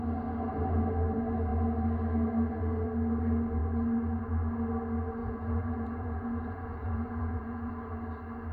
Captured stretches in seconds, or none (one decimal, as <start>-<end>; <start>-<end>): 0.0-5.2; 7.7-8.5